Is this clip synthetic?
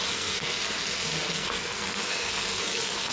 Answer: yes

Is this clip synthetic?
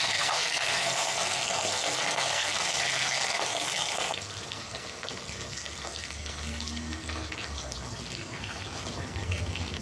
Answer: yes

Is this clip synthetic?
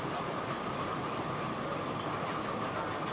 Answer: no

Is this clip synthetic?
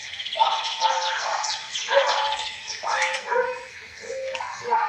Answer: yes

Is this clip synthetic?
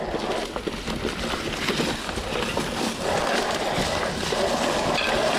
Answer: no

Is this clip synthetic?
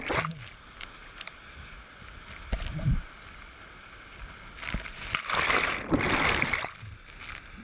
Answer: no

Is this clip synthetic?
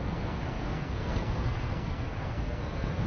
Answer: yes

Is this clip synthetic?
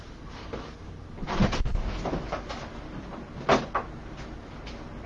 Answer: no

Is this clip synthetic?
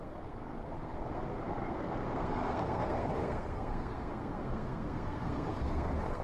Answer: yes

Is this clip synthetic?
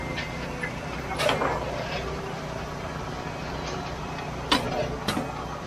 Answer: no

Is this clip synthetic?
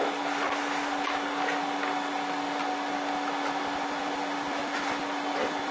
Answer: no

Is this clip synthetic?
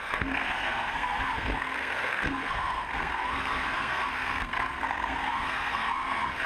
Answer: yes